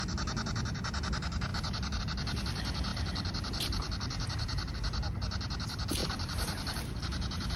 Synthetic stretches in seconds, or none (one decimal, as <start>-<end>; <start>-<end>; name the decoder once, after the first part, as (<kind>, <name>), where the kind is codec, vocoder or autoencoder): 2.9-4.7 (vocoder, BigVGAN v2); 6.0-7.0